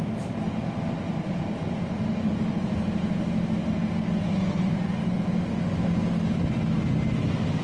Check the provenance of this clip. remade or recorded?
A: recorded